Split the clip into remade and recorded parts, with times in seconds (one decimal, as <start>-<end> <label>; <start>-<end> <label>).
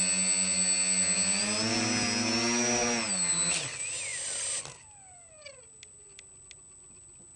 0.0-7.4 recorded